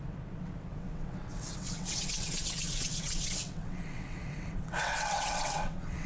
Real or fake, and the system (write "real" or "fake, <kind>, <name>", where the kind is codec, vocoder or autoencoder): fake, vocoder, WaveNeXt